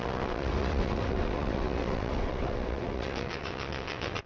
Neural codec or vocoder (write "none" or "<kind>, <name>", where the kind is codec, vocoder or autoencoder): vocoder, WaveNeXt